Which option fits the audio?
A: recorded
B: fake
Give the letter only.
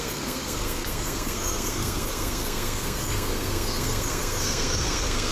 B